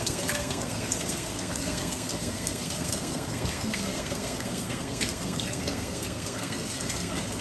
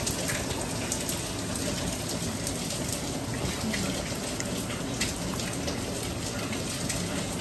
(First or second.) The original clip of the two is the second